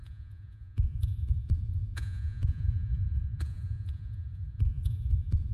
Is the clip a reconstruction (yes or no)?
yes